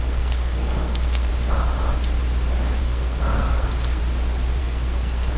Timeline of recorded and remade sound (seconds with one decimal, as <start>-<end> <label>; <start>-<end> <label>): 0.0-1.3 remade; 1.3-2.8 recorded; 2.8-4.0 remade; 4.0-4.6 recorded; 4.6-5.4 remade